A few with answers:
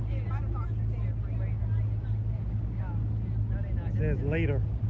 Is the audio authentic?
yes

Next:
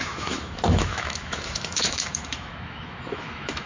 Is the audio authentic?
no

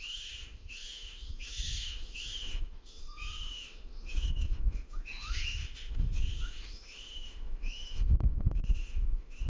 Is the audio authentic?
no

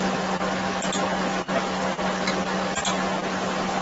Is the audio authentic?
yes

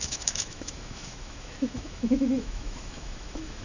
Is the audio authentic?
no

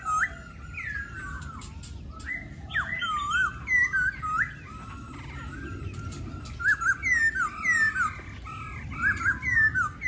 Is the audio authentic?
yes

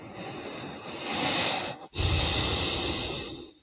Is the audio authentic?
yes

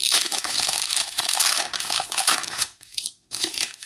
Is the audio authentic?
no